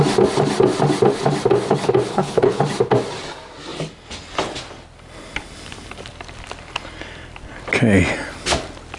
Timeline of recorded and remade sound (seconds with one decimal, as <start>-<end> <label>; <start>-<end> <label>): 0.0-2.1 recorded; 2.1-2.6 remade; 2.6-9.0 recorded